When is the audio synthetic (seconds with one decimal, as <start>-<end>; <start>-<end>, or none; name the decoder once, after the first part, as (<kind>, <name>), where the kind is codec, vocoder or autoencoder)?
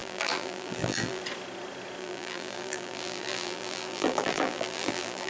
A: 0.0-1.2 (vocoder, BigVGAN v2); 2.0-5.3